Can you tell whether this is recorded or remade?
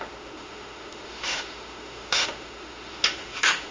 remade